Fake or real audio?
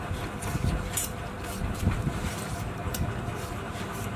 fake